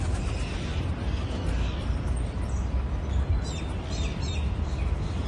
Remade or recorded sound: recorded